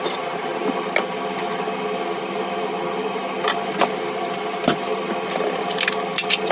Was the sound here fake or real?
real